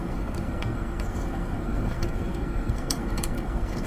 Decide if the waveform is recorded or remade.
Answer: remade